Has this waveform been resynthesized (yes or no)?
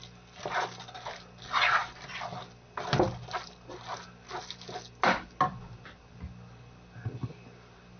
no